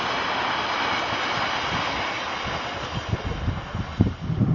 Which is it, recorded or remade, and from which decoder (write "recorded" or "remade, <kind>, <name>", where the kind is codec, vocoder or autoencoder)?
recorded